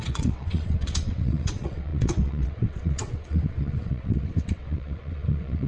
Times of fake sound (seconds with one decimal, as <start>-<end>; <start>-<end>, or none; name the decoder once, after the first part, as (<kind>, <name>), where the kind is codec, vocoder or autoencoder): 0.0-5.7 (vocoder, WaveNeXt)